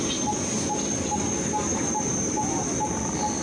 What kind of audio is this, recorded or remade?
recorded